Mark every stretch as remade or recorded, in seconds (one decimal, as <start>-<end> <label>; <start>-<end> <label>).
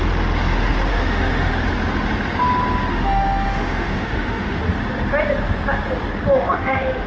0.0-0.9 recorded; 0.9-1.5 remade; 1.5-2.9 recorded; 2.9-4.6 remade; 4.6-6.3 recorded; 6.3-7.1 remade